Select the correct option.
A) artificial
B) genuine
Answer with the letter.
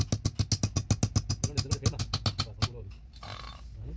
B